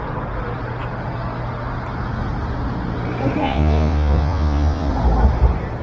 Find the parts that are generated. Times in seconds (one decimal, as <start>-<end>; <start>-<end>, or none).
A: 3.4-4.9